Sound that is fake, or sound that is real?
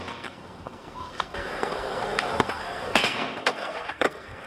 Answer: fake